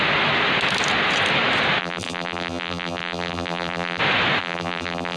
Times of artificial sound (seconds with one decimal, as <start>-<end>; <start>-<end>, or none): 1.8-4.0; 4.4-5.2